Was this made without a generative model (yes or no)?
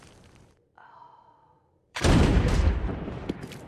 no